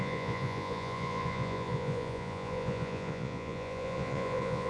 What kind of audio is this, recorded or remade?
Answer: remade